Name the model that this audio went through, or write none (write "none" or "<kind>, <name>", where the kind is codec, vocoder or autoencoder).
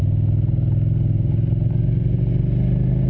none